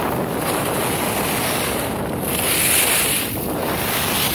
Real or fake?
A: real